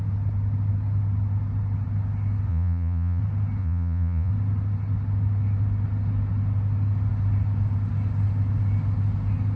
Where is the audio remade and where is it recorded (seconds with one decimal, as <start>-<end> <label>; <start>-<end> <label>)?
0.0-2.5 recorded; 2.5-3.2 remade; 3.2-3.6 recorded; 3.6-4.3 remade; 4.3-9.6 recorded